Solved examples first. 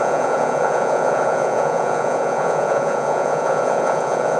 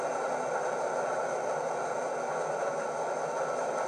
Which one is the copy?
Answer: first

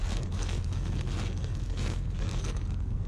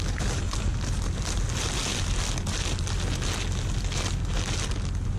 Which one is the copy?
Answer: first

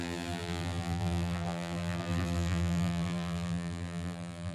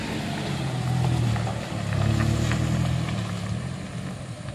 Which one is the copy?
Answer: first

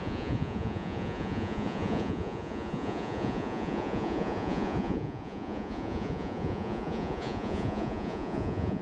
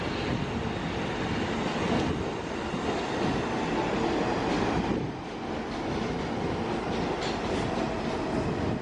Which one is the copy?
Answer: first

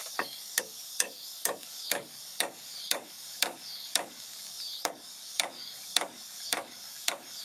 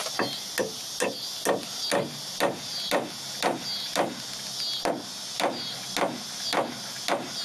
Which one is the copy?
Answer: first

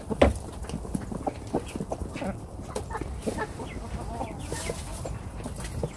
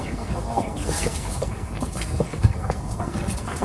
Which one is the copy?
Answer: second